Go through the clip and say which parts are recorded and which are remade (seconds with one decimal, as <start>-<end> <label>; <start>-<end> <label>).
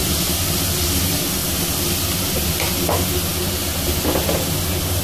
0.0-0.6 remade; 0.6-5.0 recorded